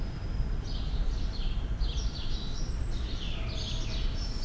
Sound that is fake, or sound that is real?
real